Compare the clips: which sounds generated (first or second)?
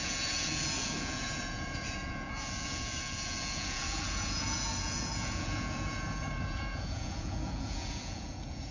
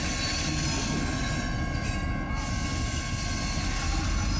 first